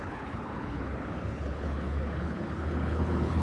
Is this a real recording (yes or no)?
no